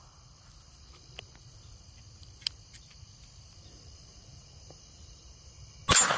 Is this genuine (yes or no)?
yes